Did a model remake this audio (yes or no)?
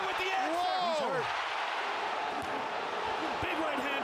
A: no